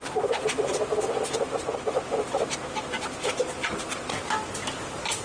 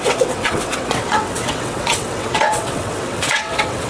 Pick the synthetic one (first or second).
second